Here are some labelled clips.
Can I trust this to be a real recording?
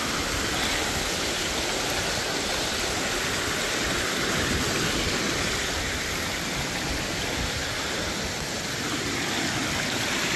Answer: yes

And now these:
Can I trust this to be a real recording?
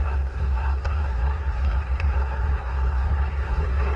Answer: no